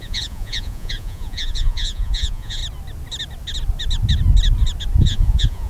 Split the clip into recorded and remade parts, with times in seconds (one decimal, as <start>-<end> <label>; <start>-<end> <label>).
0.0-2.6 remade; 2.6-5.0 recorded; 5.0-5.7 remade